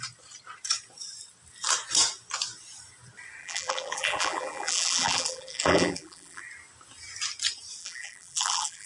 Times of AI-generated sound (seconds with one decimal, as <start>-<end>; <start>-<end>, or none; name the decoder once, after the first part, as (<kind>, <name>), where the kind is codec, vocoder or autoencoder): 3.4-6.4 (vocoder, BigVGAN v2); 7.8-8.9